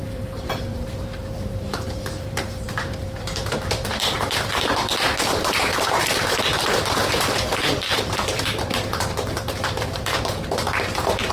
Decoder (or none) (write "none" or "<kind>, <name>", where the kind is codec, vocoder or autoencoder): vocoder, BigVGAN v2